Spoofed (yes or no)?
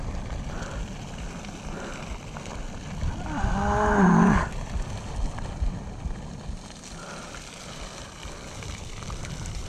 no